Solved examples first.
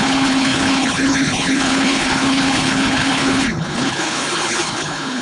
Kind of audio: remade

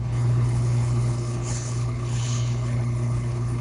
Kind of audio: remade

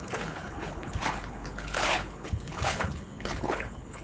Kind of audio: remade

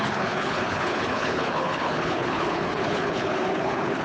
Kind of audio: remade